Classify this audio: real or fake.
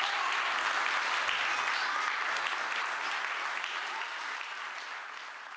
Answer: real